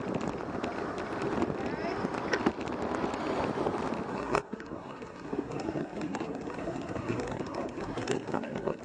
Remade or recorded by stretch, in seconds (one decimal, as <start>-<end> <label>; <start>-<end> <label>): 0.0-4.1 recorded; 4.1-8.8 remade